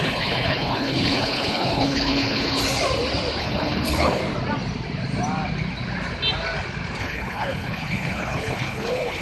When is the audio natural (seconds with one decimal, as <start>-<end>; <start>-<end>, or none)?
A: 2.6-3.4; 4.2-7.0